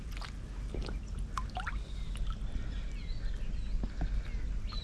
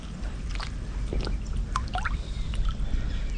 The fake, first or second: second